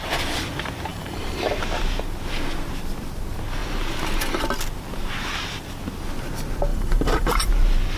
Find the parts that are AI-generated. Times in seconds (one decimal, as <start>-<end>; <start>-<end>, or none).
0.9-1.4; 6.7-7.5